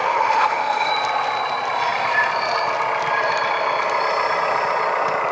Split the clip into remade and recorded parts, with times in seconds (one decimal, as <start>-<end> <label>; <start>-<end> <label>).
0.0-0.9 remade; 0.9-5.3 recorded

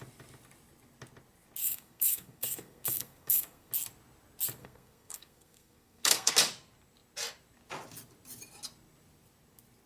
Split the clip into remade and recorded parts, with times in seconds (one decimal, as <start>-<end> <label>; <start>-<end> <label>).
0.0-1.6 recorded; 1.6-3.7 remade; 3.7-4.6 recorded; 4.6-6.3 remade; 6.3-9.9 recorded